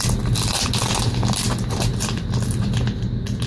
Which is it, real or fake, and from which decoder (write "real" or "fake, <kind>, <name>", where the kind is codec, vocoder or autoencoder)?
real